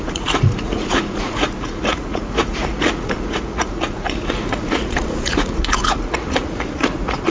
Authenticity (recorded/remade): remade